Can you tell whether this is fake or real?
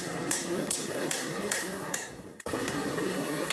fake